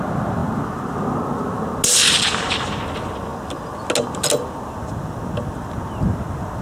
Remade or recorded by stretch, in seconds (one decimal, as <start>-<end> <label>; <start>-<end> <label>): 0.0-6.6 recorded